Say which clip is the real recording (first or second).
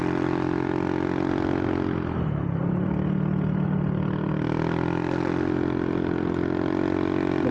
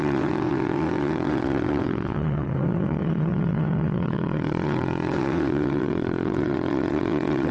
first